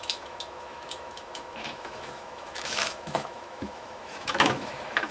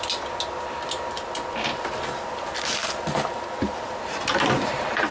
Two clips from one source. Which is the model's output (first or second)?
first